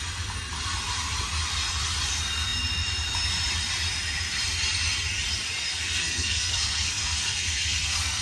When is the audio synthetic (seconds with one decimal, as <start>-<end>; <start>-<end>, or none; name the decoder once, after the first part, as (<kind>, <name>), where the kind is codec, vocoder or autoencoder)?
5.7-8.2 (codec, SNAC)